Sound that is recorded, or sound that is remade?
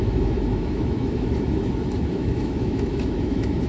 remade